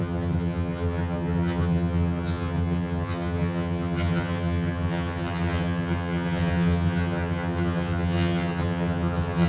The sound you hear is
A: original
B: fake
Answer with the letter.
B